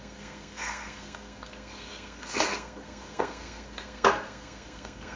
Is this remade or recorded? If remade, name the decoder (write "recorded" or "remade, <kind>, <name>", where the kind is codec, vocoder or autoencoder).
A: remade, codec, SNAC